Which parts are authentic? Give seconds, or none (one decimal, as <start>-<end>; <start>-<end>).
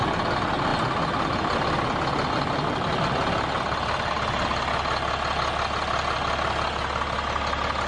0.0-7.9